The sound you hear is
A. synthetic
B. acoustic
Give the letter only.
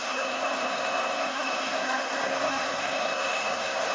A